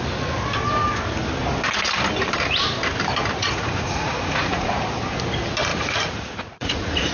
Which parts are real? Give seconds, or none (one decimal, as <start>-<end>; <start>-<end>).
0.0-3.4; 4.7-5.7